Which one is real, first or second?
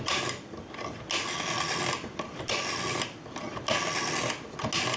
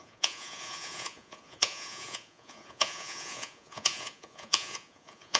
first